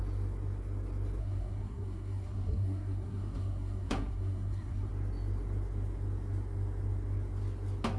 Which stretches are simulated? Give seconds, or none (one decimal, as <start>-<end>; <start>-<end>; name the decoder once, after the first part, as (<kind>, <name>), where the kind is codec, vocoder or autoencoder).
1.2-4.9 (codec, SNAC)